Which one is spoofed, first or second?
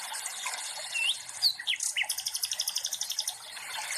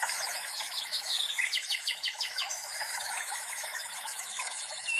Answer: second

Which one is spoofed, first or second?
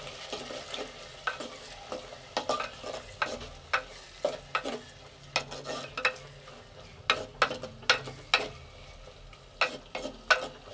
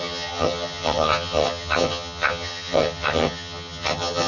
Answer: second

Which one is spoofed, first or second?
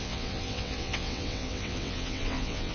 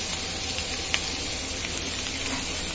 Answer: first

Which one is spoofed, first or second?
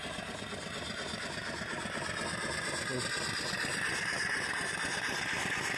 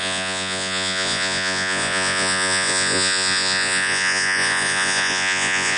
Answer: second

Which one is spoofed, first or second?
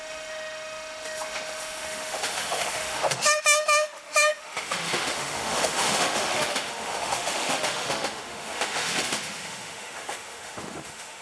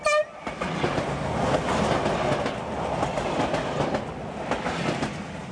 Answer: first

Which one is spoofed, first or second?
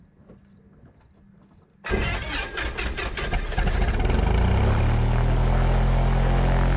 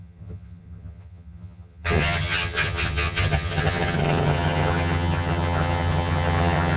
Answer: second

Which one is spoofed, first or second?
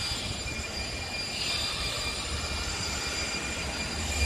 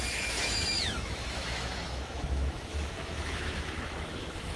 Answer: second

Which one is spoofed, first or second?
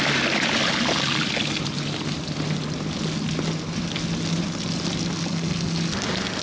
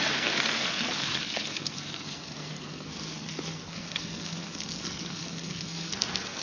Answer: second